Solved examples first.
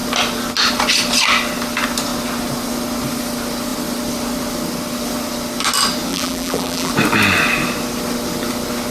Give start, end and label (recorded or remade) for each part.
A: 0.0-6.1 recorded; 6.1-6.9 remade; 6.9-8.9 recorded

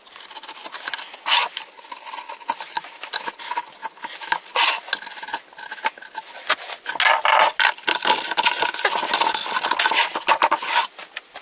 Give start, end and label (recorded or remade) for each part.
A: 0.0-11.4 recorded